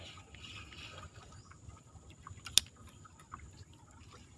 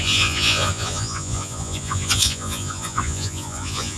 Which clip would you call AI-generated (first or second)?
second